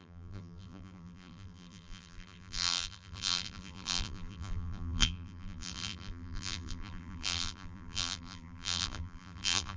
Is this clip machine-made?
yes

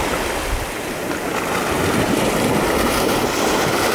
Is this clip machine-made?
no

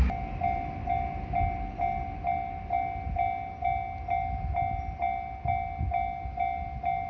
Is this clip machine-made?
no